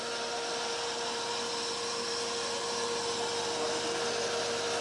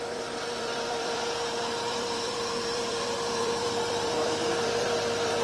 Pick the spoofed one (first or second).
second